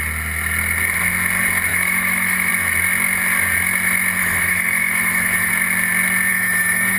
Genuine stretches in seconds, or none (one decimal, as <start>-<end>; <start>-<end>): 0.0-1.7; 2.5-4.2; 5.5-6.3